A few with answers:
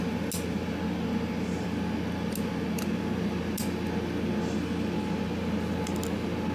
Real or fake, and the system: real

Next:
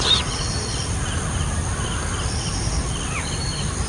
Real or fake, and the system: real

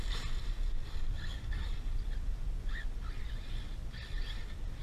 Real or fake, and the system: real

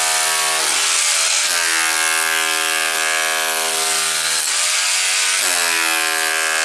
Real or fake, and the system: real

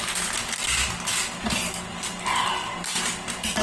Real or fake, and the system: real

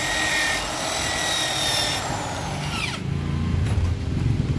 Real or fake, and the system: real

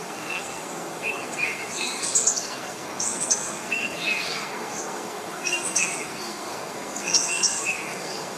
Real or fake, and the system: fake, codec, SNAC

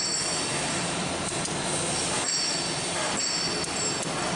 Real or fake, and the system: real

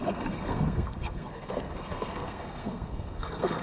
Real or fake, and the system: fake, codec, SNAC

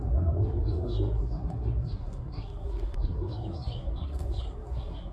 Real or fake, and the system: fake, codec, SNAC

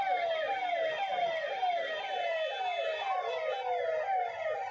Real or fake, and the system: real